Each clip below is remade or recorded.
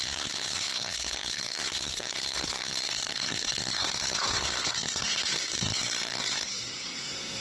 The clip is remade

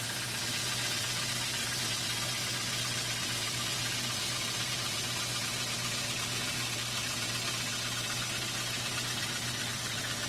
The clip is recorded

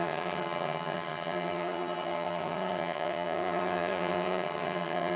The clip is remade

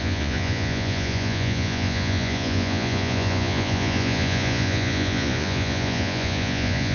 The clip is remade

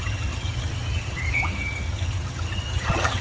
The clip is remade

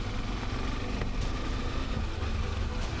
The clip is recorded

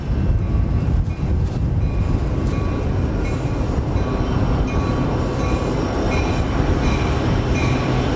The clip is recorded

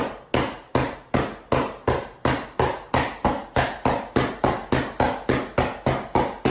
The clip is recorded